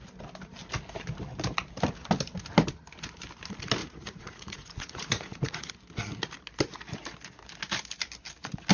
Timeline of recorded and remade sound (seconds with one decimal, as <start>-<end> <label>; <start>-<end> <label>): 0.0-3.8 recorded; 3.8-5.7 remade; 5.7-8.7 recorded